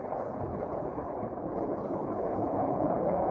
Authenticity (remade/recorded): remade